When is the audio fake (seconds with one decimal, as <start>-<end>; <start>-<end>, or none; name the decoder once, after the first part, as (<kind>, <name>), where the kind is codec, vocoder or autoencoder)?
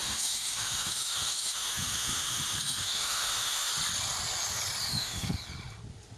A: 0.0-3.7 (autoencoder, DAC-VAE); 4.9-5.4